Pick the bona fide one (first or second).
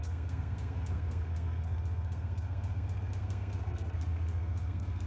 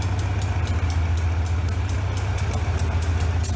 second